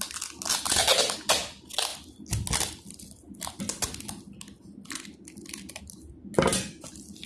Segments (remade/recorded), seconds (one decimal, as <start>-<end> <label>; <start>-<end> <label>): 0.0-7.3 recorded